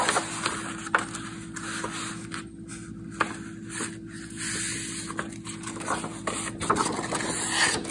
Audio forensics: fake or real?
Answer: real